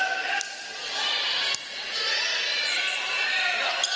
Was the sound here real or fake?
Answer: real